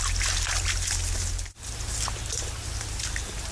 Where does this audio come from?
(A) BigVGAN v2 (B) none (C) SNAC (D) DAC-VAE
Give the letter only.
B